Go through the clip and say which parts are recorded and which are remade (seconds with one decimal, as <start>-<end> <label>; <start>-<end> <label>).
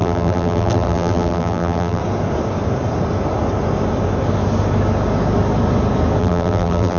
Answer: 0.0-2.0 remade; 2.0-6.2 recorded; 6.2-7.0 remade